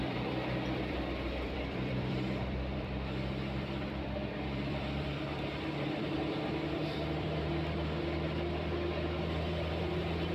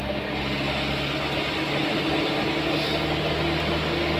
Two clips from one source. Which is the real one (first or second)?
second